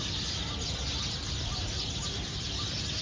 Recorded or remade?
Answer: recorded